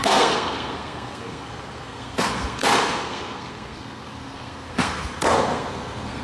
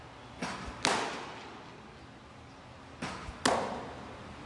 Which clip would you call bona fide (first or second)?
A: second